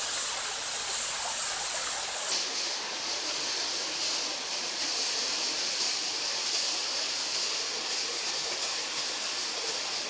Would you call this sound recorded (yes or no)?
yes